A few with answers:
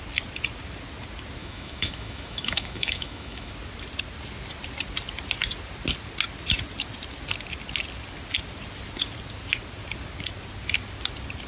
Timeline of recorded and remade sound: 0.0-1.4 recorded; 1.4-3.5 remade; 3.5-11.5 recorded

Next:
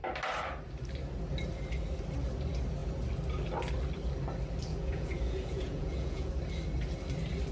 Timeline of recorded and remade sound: 0.0-4.7 recorded; 4.7-6.3 remade; 6.3-7.5 recorded